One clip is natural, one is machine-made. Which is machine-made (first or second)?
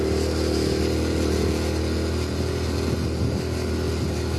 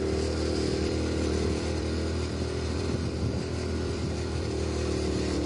second